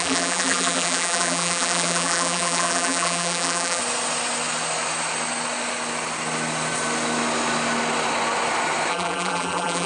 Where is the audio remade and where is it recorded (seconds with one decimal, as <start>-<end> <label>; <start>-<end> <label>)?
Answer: 0.0-3.8 remade; 3.8-8.9 recorded; 8.9-9.9 remade